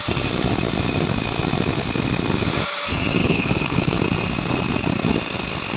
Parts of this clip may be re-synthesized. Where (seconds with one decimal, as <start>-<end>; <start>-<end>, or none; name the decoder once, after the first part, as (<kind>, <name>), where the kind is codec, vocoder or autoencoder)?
3.2-4.0 (codec, HILCodec)